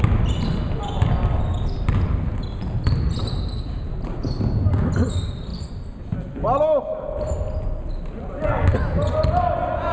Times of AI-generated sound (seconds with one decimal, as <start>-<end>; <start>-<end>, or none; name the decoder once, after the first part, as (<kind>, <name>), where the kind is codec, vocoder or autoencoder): none